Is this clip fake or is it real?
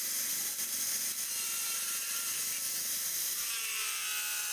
real